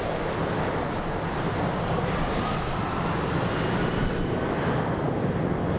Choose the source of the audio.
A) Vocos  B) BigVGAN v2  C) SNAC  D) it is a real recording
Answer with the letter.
D